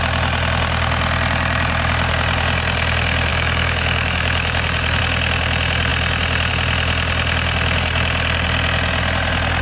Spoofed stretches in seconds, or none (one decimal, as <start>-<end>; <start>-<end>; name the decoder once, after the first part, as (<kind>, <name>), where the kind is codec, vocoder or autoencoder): 3.3-5.0 (autoencoder, DAC-VAE)